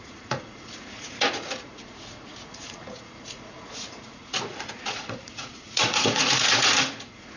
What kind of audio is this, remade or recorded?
remade